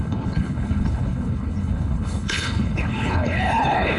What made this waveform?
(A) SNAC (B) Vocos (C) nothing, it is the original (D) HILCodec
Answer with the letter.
D